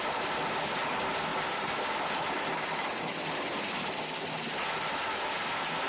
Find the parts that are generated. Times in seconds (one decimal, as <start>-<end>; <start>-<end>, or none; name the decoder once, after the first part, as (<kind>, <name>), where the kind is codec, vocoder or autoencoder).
none